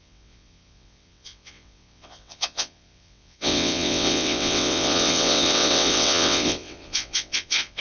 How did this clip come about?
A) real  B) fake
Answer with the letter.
B